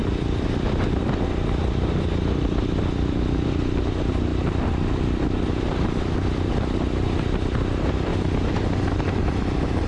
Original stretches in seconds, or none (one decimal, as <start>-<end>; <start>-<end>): 4.3-5.0; 8.1-9.1